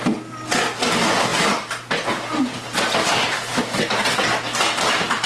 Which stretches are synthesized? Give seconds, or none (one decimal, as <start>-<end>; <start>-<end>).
none